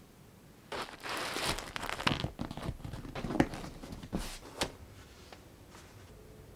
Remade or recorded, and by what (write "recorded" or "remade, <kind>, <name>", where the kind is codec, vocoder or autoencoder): recorded